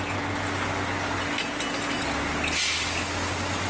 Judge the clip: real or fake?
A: real